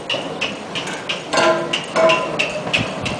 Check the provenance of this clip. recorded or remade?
recorded